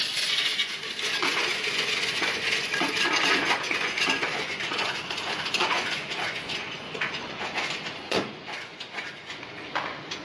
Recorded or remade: remade